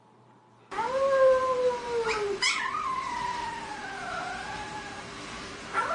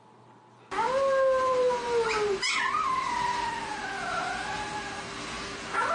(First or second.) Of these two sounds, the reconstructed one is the first